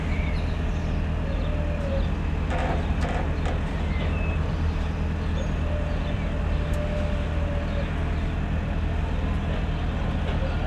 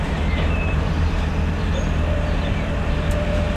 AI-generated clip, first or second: second